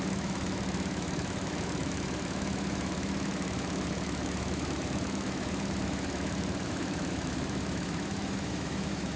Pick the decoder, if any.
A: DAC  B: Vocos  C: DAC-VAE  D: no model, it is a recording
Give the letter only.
C